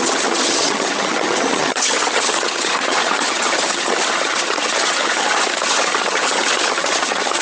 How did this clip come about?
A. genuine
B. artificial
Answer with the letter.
B